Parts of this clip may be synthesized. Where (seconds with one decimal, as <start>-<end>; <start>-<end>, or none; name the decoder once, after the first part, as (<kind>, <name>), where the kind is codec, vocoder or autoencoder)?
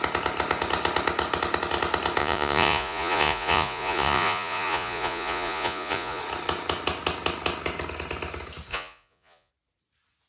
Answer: 2.2-6.2 (vocoder, Vocos); 8.7-9.5